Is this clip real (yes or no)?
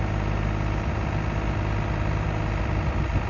yes